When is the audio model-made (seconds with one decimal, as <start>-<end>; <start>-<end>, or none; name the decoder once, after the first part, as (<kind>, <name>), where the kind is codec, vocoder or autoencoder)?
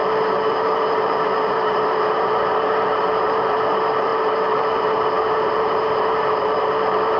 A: 0.5-7.2 (vocoder, BigVGAN v2)